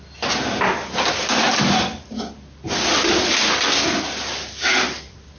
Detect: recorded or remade recorded